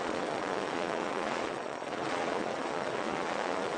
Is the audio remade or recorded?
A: remade